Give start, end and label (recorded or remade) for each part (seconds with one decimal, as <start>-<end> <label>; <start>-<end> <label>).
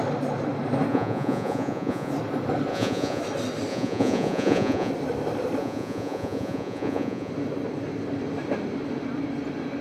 0.0-0.9 recorded; 0.9-2.1 remade; 2.1-2.7 recorded; 2.7-3.2 remade; 3.2-3.7 recorded; 3.7-4.9 remade; 4.9-5.6 recorded; 5.6-7.3 remade; 7.3-9.8 recorded